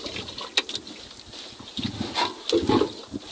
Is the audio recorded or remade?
recorded